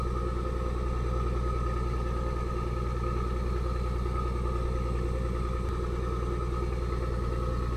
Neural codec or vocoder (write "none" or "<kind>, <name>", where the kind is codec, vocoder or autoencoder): none